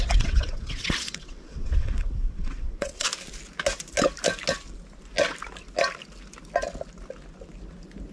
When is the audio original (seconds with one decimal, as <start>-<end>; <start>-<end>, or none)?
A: 3.1-8.1